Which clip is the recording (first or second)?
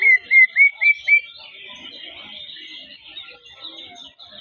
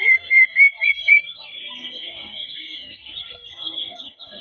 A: first